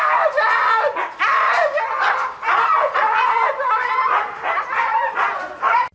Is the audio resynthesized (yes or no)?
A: yes